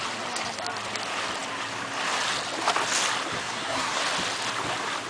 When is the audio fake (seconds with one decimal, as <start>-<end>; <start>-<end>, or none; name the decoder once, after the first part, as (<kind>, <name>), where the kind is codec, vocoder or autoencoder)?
3.4-4.0 (codec, SNAC)